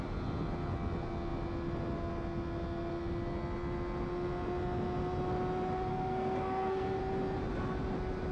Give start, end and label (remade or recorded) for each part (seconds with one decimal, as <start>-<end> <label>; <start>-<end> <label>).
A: 0.0-5.9 recorded; 5.9-7.0 remade; 7.0-8.3 recorded